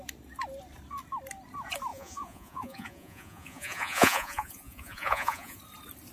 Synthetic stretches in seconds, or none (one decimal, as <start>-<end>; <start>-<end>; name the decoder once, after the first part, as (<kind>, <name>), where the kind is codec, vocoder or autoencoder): 1.9-5.6 (vocoder, Vocos)